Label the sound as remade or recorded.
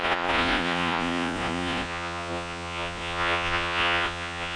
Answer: remade